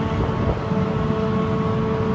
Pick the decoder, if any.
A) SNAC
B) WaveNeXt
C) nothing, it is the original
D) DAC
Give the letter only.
C